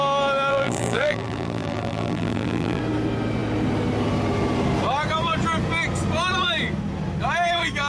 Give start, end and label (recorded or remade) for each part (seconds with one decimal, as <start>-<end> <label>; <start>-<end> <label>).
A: 0.0-0.5 recorded; 0.5-2.8 remade; 2.8-7.9 recorded